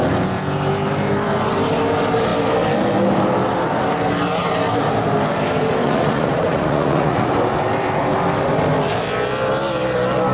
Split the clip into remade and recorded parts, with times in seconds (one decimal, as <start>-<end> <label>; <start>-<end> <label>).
0.0-5.8 recorded; 5.8-7.3 remade; 7.3-10.3 recorded

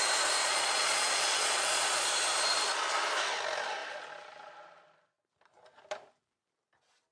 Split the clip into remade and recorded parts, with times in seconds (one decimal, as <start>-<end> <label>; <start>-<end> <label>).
0.0-0.4 recorded; 0.4-2.1 remade; 2.1-7.1 recorded

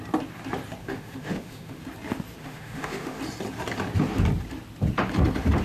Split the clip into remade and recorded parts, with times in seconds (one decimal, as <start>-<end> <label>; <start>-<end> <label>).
0.0-0.8 recorded; 0.8-1.8 remade; 1.8-2.4 recorded; 2.4-3.2 remade; 3.2-5.6 recorded